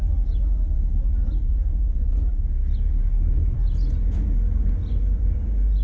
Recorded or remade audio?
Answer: recorded